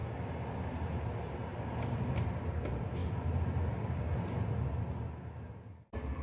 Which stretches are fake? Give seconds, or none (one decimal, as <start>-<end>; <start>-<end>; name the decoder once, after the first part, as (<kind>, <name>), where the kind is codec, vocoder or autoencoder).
none